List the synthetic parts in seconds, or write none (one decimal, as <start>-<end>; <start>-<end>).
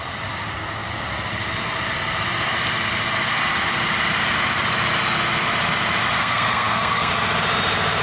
6.2-7.1